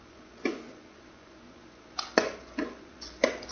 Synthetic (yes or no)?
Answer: yes